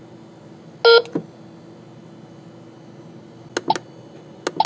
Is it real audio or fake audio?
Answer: real